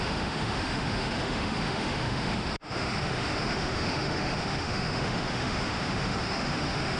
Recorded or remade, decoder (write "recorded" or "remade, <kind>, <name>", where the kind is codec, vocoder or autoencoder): remade, autoencoder, DAC-VAE